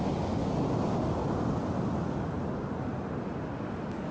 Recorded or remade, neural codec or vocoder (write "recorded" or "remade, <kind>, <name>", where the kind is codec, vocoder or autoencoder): recorded